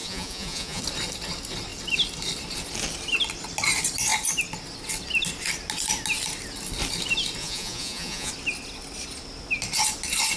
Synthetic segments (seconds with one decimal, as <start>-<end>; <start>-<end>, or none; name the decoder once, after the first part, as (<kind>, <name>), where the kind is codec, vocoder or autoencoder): 0.0-0.8 (vocoder, Vocos); 7.4-8.3

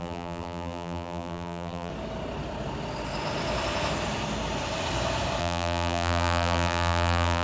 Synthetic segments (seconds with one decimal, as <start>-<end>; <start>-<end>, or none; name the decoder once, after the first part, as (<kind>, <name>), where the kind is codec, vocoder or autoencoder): 0.0-1.9 (vocoder, BigVGAN v2); 5.4-7.4

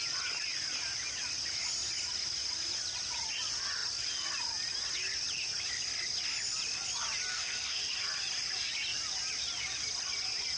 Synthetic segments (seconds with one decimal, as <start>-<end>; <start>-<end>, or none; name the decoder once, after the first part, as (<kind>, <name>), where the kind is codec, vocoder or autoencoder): 7.3-7.8 (codec, SNAC)

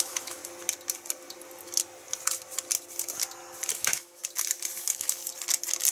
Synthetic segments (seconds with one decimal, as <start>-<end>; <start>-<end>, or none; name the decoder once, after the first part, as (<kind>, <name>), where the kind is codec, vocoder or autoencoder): 0.0-0.4 (autoencoder, DAC-VAE); 3.7-4.2; 4.8-5.2

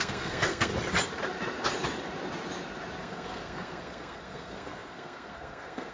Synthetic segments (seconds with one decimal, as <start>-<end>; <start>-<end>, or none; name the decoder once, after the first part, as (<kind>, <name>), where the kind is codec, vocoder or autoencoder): 0.0-0.7 (codec, SNAC); 3.0-5.9

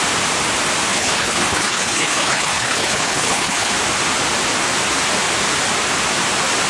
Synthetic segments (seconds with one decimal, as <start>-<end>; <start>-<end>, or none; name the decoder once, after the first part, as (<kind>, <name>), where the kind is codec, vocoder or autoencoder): 0.9-3.7 (codec, HILCodec)